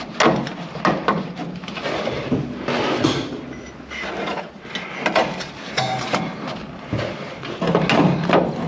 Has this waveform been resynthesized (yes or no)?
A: no